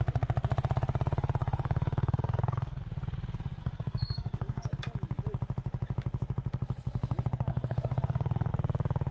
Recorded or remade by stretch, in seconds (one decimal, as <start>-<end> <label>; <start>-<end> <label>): 0.0-1.4 recorded; 1.4-2.8 remade; 2.8-3.6 recorded; 3.6-4.8 remade; 4.8-7.5 recorded; 7.5-8.5 remade; 8.5-9.1 recorded